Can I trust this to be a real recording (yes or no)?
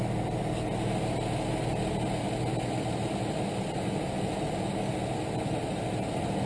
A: yes